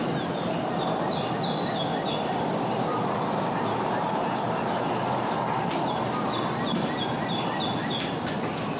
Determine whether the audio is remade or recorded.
recorded